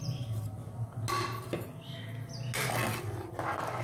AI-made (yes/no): no